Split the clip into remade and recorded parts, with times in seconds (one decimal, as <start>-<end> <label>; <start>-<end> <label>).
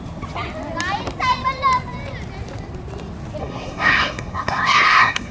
0.0-3.4 recorded; 3.4-5.3 remade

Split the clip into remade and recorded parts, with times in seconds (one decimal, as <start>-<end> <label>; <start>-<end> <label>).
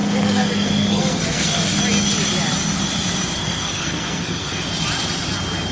0.0-1.8 remade; 1.8-3.4 recorded; 3.4-4.6 remade; 4.6-5.7 recorded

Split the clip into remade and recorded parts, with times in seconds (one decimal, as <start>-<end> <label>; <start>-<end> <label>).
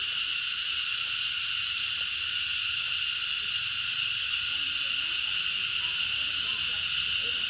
0.0-7.5 recorded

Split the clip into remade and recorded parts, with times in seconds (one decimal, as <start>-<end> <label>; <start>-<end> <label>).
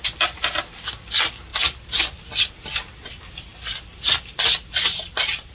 0.0-5.5 recorded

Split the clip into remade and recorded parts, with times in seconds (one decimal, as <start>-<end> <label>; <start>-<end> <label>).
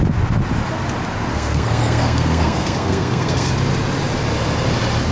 0.0-1.3 recorded; 1.3-3.5 remade; 3.5-5.1 recorded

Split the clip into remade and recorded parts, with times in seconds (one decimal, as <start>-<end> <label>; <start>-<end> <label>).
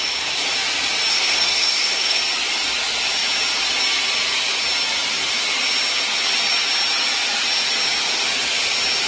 0.0-1.1 recorded; 1.1-2.2 remade; 2.2-9.1 recorded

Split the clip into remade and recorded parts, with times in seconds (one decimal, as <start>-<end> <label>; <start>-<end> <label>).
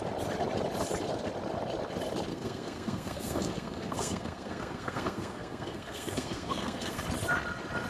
0.0-2.3 recorded; 2.3-7.0 remade; 7.0-7.9 recorded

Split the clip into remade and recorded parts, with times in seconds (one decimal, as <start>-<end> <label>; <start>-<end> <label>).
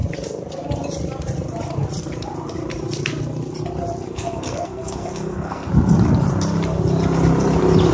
0.0-4.1 recorded; 4.1-5.7 remade; 5.7-7.9 recorded